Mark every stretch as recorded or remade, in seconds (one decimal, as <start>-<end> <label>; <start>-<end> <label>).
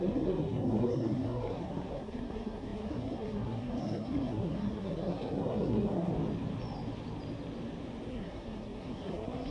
0.0-6.1 remade; 6.1-8.1 recorded; 8.1-9.5 remade